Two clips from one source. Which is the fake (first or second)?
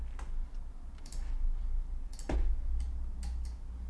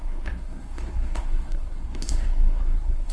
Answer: second